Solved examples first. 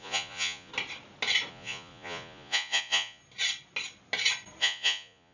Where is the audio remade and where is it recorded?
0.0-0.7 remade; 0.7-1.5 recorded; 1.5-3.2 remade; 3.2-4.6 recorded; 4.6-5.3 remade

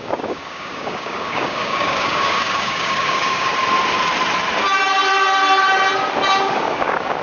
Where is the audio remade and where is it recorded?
0.0-3.5 remade; 3.5-6.3 recorded; 6.3-7.2 remade

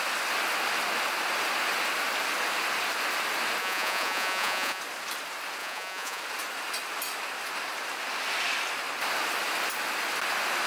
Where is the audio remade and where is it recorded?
0.0-3.6 recorded; 3.6-4.8 remade; 4.8-5.6 recorded; 5.6-6.2 remade; 6.2-10.7 recorded

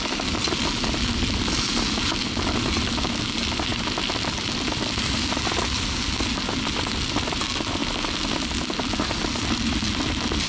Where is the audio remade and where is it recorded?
0.0-10.5 recorded

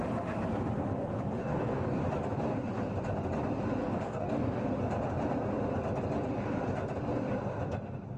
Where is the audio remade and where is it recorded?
0.0-1.4 recorded; 1.4-2.0 remade; 2.0-3.8 recorded; 3.8-4.6 remade; 4.6-8.2 recorded

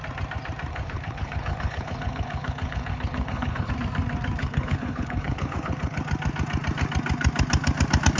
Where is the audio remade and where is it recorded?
0.0-0.7 recorded; 0.7-3.7 remade; 3.7-4.4 recorded; 4.4-6.0 remade; 6.0-8.2 recorded

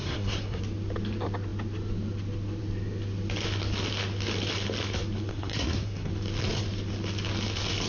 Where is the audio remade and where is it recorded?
0.0-0.6 remade; 0.6-5.3 recorded; 5.3-6.1 remade; 6.1-7.9 recorded